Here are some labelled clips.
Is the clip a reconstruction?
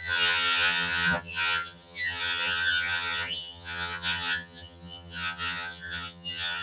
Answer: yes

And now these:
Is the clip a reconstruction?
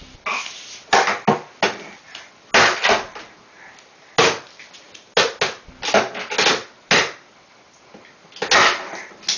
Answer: no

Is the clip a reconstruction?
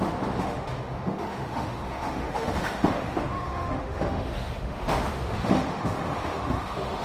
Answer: yes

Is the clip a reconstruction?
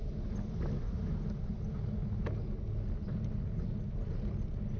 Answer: no